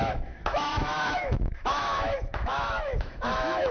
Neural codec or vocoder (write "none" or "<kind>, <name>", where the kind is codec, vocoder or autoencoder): autoencoder, DAC-VAE